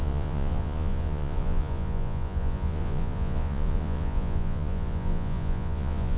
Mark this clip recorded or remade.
remade